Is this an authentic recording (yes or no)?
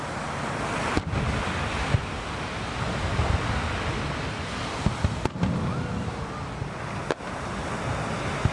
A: yes